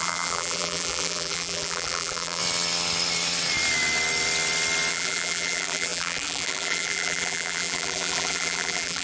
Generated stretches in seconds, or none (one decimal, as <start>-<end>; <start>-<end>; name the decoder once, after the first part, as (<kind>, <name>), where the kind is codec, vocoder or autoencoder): 0.0-2.4 (vocoder, BigVGAN v2); 4.9-9.0